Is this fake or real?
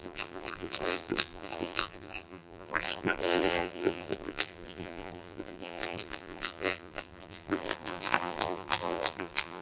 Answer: fake